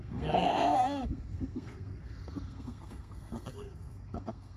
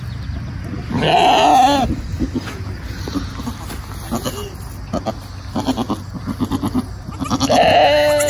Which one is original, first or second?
second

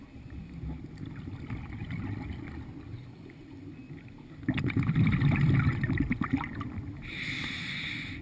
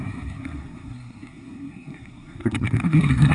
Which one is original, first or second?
first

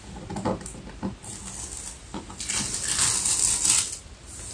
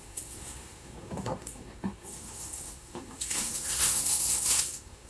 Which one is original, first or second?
first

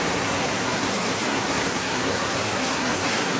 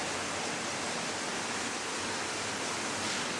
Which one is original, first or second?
second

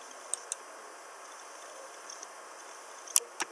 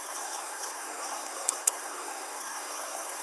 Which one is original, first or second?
first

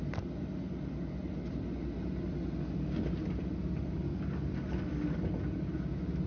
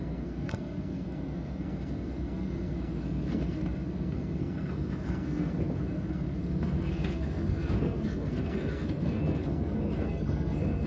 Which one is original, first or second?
first